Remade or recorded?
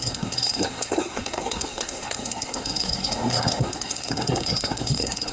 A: remade